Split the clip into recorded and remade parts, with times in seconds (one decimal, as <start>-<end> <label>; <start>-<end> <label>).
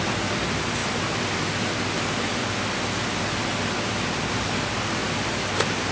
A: 0.0-5.0 recorded; 5.0-5.9 remade